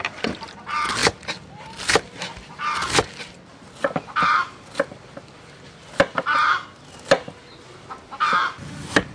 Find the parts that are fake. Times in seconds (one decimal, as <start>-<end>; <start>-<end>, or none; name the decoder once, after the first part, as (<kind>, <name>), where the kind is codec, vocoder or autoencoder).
none